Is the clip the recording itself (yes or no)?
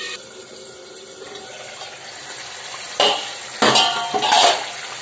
yes